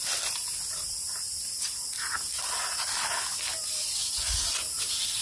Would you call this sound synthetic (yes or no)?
no